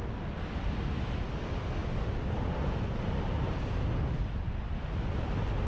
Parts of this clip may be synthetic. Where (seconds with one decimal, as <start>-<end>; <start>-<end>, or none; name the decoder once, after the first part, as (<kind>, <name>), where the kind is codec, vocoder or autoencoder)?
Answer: none